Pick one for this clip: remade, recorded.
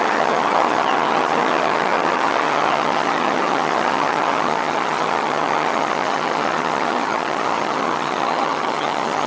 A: remade